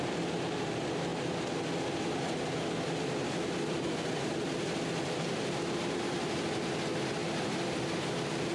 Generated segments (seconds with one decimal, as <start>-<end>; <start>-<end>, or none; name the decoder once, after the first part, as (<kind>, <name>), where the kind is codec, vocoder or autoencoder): none